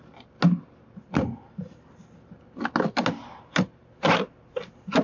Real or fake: real